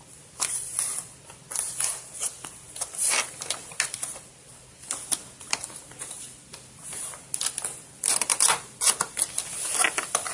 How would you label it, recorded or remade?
recorded